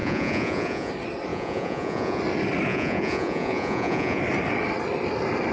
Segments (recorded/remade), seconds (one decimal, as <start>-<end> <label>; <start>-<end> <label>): 0.0-0.9 remade; 0.9-1.3 recorded; 1.3-2.2 remade; 2.2-2.7 recorded; 2.7-4.2 remade; 4.2-5.5 recorded